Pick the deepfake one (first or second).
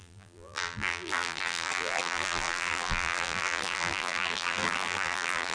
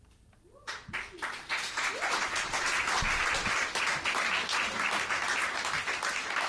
first